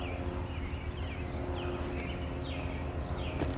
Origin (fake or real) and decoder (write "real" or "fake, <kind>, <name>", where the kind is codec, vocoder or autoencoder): real